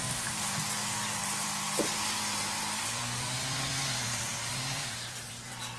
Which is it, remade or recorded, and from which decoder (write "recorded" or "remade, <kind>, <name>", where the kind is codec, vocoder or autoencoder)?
remade, vocoder, BigVGAN v2